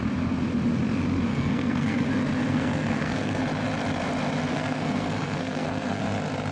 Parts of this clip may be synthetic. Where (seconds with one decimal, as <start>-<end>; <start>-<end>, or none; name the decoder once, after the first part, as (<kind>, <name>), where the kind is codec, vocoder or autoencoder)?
1.3-2.1 (codec, SNAC); 2.5-3.4; 4.5-6.0